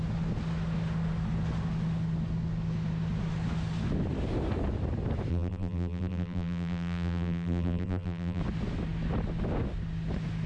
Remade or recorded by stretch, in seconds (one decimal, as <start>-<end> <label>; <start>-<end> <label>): 0.0-5.3 recorded; 5.3-8.4 remade; 8.4-10.5 recorded